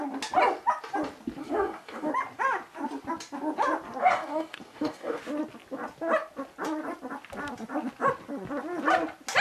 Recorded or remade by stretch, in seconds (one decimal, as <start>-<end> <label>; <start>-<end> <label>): 0.0-1.4 recorded; 1.4-2.1 remade; 2.1-4.0 recorded; 4.0-5.2 remade; 5.2-9.4 recorded